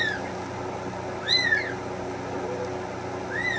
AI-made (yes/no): no